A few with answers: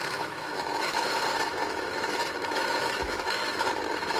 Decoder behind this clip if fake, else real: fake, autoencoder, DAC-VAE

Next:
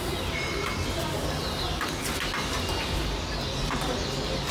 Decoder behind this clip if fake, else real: real